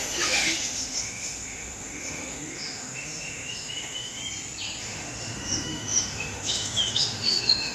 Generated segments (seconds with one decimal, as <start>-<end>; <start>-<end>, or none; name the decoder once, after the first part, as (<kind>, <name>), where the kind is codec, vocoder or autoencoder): 0.0-4.2 (autoencoder, DAC-VAE); 4.8-7.7